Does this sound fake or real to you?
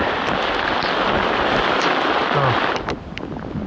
real